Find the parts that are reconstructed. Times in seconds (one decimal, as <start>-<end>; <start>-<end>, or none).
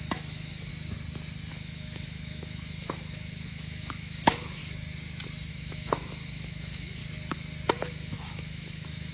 0.0-0.7; 1.5-4.6; 5.5-7.0; 7.7-9.1